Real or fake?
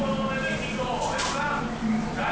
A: real